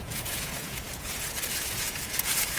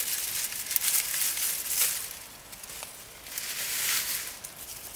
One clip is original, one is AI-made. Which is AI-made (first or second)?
first